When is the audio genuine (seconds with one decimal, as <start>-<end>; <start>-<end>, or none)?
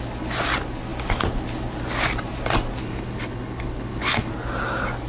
0.0-2.8; 4.3-5.1